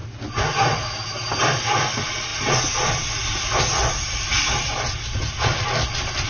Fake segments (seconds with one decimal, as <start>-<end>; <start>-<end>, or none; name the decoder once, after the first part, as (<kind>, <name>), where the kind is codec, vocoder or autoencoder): none